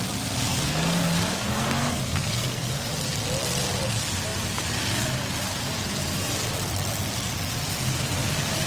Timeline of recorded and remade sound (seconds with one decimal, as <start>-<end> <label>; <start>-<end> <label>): 0.0-0.5 recorded; 0.5-2.7 remade; 2.7-8.7 recorded